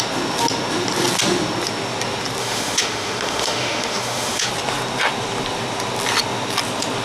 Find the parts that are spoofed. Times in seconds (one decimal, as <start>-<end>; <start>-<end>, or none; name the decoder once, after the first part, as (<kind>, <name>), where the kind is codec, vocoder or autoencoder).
2.4-4.5 (autoencoder, DAC-VAE)